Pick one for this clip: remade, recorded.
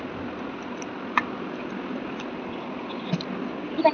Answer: recorded